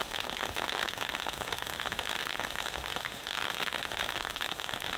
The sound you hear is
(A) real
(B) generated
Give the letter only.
B